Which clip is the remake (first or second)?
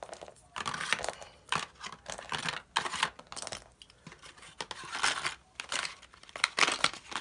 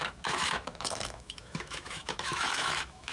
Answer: second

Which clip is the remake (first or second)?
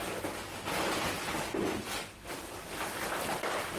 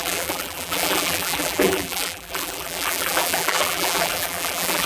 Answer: second